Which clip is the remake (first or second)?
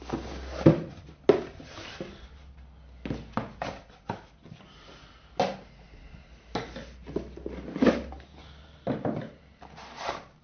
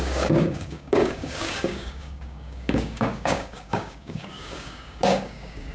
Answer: second